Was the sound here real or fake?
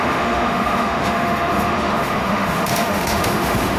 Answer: fake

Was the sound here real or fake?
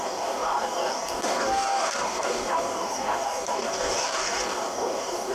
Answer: fake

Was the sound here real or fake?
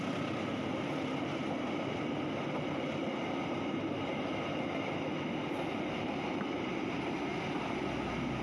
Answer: real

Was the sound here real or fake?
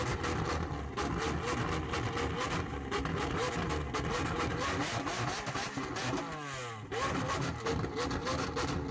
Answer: real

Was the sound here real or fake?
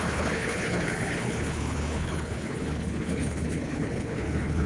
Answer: fake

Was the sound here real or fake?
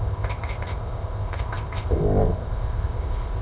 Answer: fake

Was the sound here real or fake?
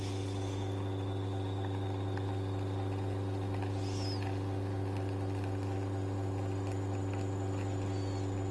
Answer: real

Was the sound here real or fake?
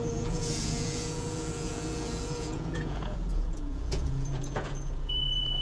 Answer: fake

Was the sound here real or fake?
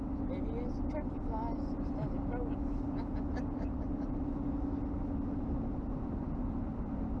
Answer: real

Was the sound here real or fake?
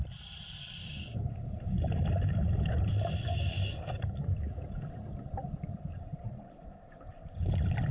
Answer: fake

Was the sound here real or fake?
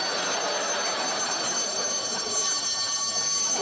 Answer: real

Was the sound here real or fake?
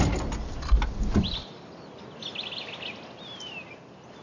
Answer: real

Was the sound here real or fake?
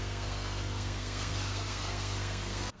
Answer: fake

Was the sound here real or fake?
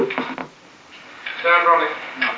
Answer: real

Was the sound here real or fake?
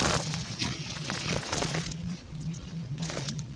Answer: fake